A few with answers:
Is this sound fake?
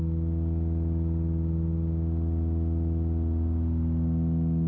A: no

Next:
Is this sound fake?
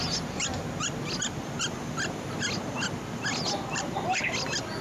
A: no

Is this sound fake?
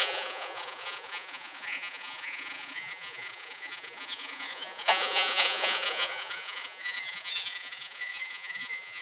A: yes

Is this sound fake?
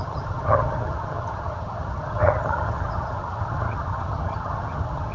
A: yes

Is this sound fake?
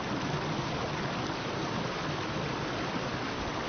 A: no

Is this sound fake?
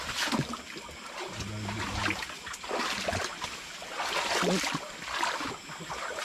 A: no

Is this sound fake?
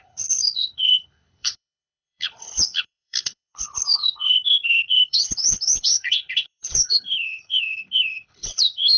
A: yes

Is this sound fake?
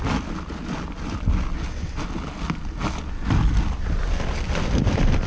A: no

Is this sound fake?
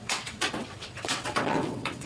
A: yes